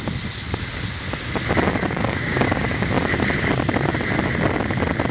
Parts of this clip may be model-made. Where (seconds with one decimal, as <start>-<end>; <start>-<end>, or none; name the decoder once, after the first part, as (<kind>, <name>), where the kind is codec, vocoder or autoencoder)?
1.8-2.7 (codec, DAC)